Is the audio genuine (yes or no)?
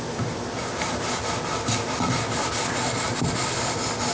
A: yes